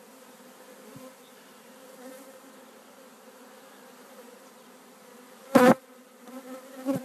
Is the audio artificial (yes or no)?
yes